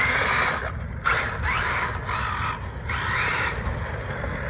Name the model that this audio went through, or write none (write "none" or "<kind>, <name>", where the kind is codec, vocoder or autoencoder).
none